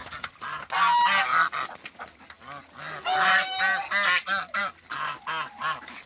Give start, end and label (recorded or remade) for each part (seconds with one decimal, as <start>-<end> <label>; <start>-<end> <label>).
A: 0.0-6.1 recorded